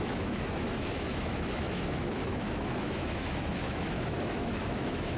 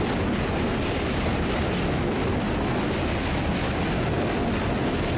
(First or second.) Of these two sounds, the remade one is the first